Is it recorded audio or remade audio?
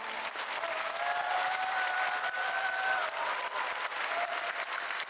recorded